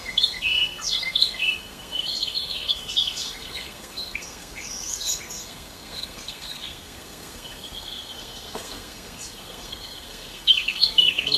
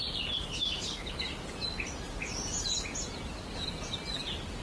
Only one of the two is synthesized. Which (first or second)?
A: first